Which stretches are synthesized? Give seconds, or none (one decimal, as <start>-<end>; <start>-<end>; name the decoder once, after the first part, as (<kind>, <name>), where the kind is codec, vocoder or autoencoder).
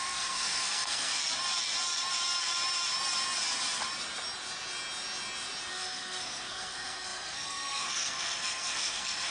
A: 0.0-1.1 (codec, SNAC); 5.7-9.3